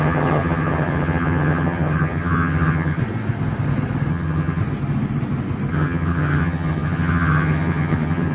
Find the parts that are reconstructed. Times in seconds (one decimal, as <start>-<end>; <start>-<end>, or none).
0.0-3.0; 4.1-4.6; 5.7-8.3